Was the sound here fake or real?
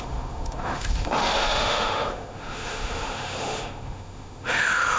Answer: fake